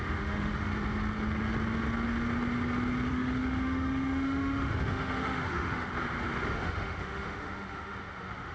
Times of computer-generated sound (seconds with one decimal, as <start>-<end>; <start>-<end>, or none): 0.0-0.7; 3.1-5.9; 6.5-8.5